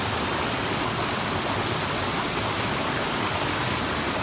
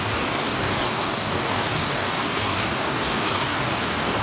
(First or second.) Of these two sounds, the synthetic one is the second